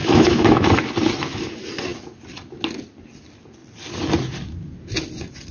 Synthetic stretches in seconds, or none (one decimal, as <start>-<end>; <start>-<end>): 0.0-0.7